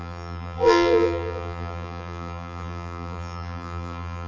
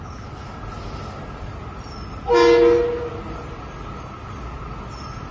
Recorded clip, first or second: second